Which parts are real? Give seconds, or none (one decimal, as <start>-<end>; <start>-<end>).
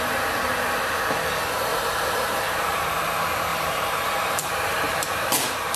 0.0-1.7; 2.8-3.5; 5.1-5.8